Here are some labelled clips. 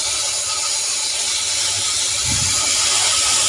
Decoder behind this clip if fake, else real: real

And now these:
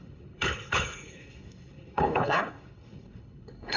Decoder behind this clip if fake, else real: fake, codec, HILCodec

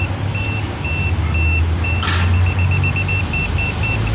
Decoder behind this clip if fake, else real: real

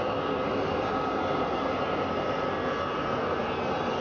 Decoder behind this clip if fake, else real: real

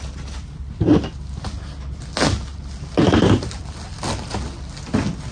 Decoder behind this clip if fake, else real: real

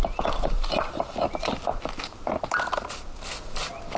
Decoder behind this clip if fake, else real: real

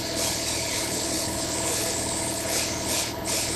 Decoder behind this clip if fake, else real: fake, codec, HILCodec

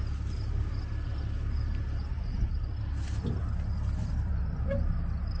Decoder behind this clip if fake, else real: real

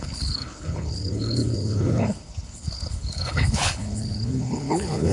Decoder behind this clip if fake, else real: fake, codec, HILCodec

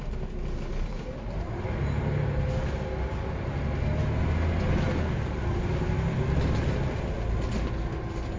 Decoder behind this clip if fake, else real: real